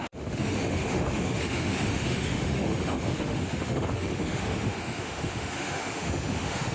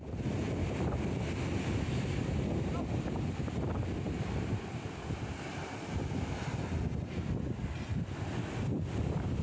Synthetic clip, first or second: first